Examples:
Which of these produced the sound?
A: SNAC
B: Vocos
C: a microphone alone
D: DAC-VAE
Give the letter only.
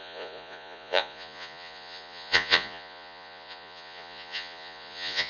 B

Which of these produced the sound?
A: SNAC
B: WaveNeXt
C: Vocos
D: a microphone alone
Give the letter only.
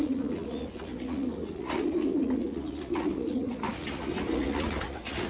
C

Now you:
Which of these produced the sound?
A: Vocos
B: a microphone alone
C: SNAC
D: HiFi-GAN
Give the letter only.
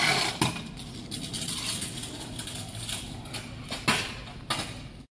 B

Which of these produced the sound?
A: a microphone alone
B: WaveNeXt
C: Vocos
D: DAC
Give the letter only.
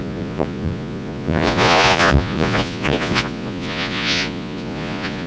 C